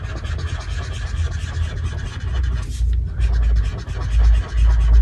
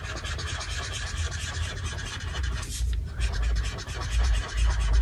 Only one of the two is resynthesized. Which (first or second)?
second